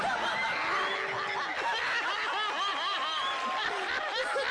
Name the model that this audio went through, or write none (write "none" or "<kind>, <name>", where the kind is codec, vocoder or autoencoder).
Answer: none